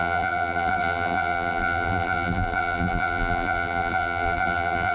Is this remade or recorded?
remade